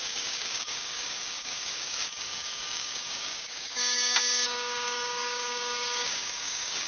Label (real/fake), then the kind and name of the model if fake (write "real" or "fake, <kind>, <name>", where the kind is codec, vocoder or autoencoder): fake, codec, DAC